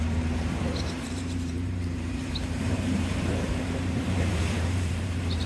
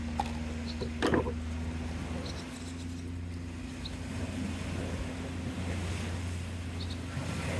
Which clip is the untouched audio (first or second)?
second